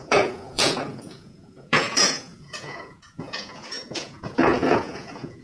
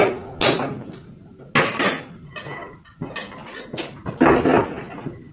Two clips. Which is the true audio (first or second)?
second